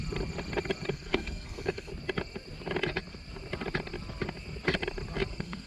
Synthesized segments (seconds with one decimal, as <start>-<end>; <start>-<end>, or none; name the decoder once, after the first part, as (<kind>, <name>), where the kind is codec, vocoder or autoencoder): 0.9-1.9 (codec, SNAC); 5.3-5.7